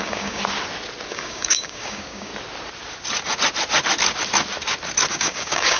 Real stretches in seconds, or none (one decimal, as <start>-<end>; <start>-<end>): 0.4-1.1; 2.3-5.1